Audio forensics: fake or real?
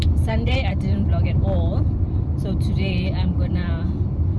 fake